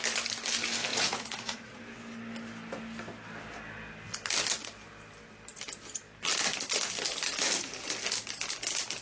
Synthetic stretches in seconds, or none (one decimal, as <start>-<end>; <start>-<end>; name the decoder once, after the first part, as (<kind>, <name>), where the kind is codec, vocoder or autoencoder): 0.9-1.8 (vocoder, Vocos)